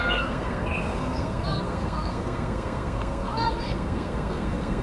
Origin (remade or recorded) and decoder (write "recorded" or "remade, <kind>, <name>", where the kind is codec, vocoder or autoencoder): remade, codec, SNAC